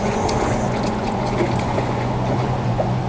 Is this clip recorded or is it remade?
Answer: remade